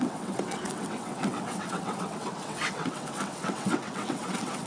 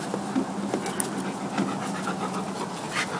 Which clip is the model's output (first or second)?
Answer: first